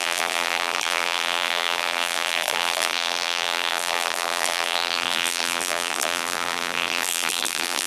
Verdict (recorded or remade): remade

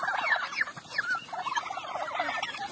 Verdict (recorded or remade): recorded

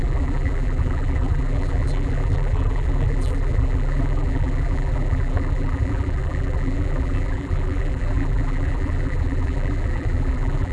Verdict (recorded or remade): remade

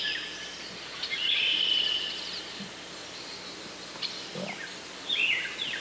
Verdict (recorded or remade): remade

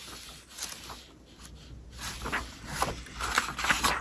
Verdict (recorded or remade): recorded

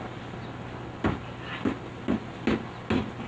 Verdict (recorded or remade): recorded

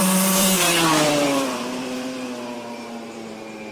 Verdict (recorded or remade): remade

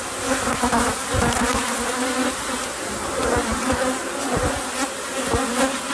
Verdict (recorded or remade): recorded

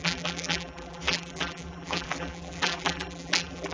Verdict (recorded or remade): remade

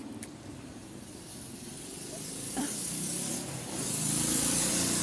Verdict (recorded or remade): remade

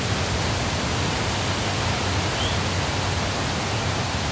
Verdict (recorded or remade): recorded